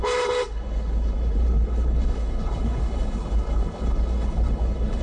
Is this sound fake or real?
fake